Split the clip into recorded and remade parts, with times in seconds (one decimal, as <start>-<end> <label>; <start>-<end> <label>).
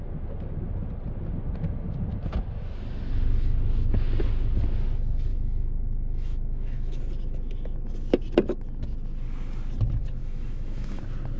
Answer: 0.0-5.3 recorded; 5.3-7.0 remade; 7.0-10.2 recorded; 10.2-11.0 remade; 11.0-11.4 recorded